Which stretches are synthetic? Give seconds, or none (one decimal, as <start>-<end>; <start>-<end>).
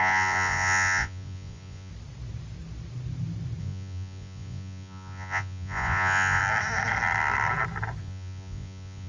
0.0-1.9; 3.6-6.4; 8.0-9.1